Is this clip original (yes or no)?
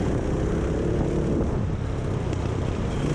yes